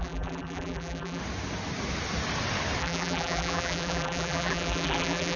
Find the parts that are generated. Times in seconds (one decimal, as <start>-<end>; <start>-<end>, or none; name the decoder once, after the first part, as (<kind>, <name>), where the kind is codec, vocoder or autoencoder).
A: 0.0-1.2 (vocoder, BigVGAN v2); 2.8-5.4